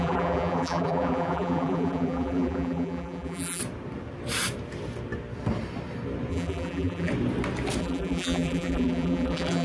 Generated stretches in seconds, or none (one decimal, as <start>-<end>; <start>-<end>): 0.0-3.6; 6.3-7.1; 7.8-9.6